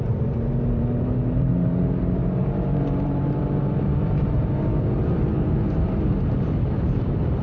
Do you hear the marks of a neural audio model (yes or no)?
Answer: yes